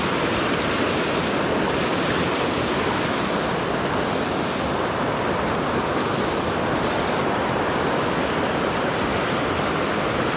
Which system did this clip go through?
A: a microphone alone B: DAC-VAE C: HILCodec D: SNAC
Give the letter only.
A